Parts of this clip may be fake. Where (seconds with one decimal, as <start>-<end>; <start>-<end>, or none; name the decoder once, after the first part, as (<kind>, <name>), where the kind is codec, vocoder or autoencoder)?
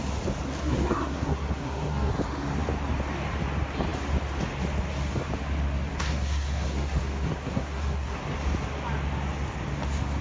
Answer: 0.6-2.1 (codec, SNAC); 5.9-8.2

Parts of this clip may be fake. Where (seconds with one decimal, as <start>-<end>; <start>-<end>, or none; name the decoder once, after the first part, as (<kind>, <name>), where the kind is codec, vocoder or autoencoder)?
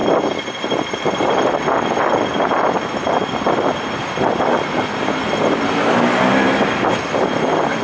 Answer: none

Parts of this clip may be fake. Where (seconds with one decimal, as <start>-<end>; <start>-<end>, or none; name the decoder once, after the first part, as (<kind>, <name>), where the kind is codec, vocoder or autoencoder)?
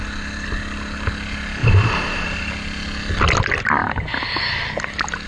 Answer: 1.6-2.5 (vocoder, BigVGAN v2)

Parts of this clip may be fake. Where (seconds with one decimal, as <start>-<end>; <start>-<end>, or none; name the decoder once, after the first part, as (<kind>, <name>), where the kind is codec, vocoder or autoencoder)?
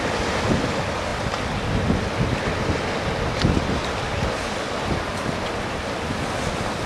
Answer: none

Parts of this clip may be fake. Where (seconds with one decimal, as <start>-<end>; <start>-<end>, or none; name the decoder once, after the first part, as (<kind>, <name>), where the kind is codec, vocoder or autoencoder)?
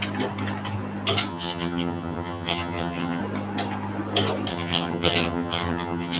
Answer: 1.3-3.2 (vocoder, HiFi-GAN); 4.5-6.2